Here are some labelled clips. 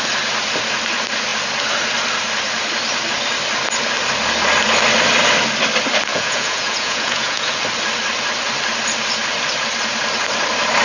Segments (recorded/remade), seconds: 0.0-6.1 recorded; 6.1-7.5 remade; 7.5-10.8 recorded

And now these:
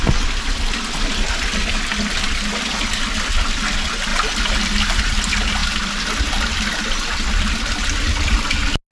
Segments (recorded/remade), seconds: 0.0-8.9 recorded

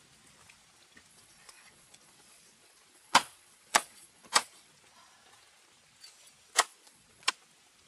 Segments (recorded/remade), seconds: 0.0-1.1 recorded; 1.1-4.7 remade; 4.7-6.7 recorded; 6.7-7.3 remade; 7.3-7.9 recorded

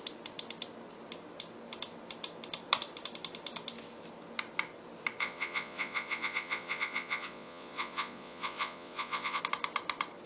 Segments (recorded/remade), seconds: 0.0-5.2 recorded; 5.2-9.4 remade; 9.4-10.3 recorded

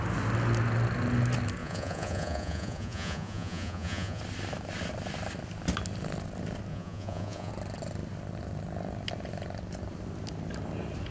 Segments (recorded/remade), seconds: 0.0-1.6 recorded; 1.6-4.2 remade; 4.2-6.7 recorded; 6.7-7.5 remade; 7.5-11.1 recorded

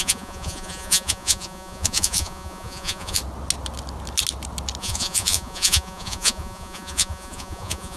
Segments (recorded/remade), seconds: 0.0-3.2 remade; 3.2-4.8 recorded; 4.8-8.0 remade

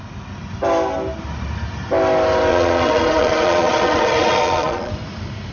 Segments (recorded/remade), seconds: 0.0-2.5 recorded; 2.5-4.9 remade; 4.9-5.5 recorded

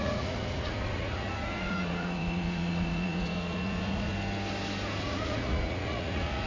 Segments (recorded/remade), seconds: 0.0-4.1 remade; 4.1-5.0 recorded; 5.0-6.5 remade